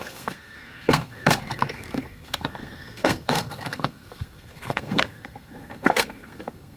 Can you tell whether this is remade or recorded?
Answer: remade